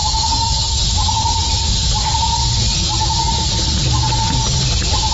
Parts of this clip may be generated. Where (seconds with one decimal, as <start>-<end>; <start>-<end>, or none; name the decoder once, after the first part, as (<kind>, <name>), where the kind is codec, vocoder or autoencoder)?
0.0-0.8 (codec, DAC)